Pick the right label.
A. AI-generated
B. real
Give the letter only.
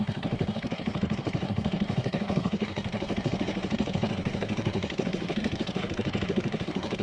A